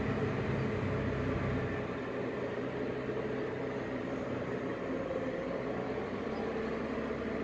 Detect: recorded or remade recorded